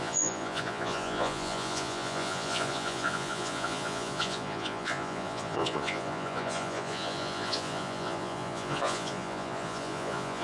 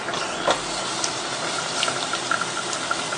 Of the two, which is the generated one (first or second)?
first